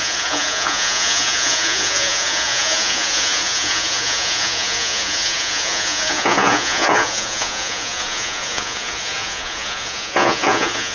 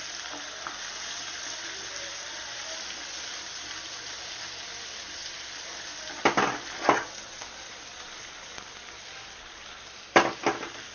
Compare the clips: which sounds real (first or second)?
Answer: second